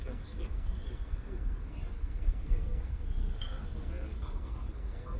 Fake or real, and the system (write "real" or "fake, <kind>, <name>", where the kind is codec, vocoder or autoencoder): fake, codec, SNAC